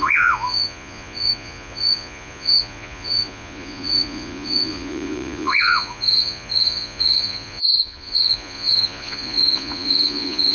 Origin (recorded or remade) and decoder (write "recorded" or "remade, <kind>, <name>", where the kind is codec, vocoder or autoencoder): remade, vocoder, Vocos